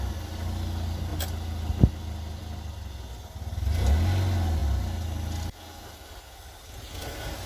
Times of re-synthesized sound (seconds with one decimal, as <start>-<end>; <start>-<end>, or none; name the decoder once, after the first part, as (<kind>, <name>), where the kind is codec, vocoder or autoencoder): none

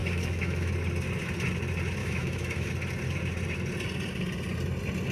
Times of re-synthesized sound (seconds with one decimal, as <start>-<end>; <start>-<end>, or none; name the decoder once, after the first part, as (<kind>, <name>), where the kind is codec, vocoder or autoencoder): 0.0-0.7 (autoencoder, DAC-VAE); 2.0-2.7

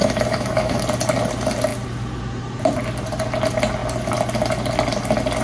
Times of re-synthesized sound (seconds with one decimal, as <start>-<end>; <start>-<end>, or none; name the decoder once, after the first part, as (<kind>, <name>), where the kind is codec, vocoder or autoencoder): 0.0-0.8 (autoencoder, DAC-VAE)